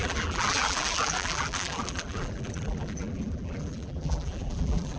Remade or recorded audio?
remade